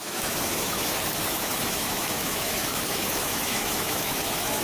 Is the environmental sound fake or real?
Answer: fake